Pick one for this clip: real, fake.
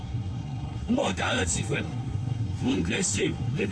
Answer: fake